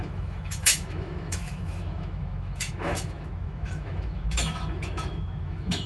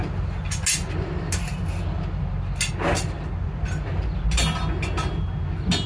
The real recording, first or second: second